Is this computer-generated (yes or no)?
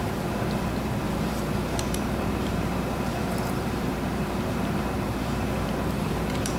yes